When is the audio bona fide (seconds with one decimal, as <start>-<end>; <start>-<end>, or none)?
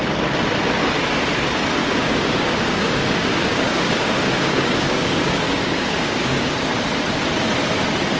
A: 0.0-1.8; 6.5-8.2